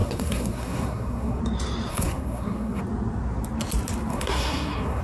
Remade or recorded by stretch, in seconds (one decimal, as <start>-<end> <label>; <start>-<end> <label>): 0.0-1.4 remade; 1.4-1.9 recorded; 1.9-2.8 remade; 2.8-4.1 recorded; 4.1-5.0 remade